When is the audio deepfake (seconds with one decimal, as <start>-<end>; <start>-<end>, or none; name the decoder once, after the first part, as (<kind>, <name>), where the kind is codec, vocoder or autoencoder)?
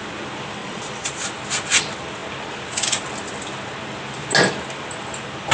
0.6-1.1 (vocoder, Vocos)